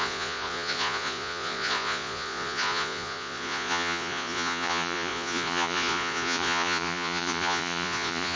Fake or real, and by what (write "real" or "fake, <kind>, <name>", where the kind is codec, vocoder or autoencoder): fake, vocoder, Vocos